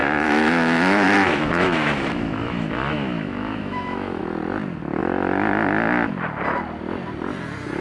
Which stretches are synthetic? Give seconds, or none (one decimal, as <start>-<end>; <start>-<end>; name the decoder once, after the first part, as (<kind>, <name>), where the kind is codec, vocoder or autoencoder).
0.0-4.2 (autoencoder, DAC-VAE)